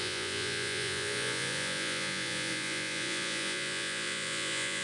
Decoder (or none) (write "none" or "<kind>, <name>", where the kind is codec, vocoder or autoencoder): vocoder, Vocos